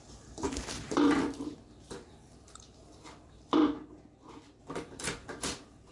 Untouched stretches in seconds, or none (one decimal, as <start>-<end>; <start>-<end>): 3.6-4.6